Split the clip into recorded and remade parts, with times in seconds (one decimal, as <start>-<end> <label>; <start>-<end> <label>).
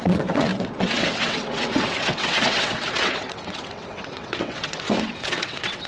0.0-5.9 remade